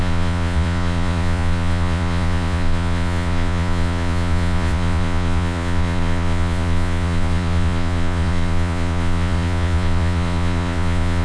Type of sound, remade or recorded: remade